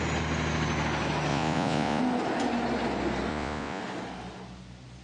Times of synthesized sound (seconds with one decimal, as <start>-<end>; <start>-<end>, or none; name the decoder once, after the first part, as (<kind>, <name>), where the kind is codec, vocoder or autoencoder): 1.3-2.0 (vocoder, Vocos); 3.3-3.8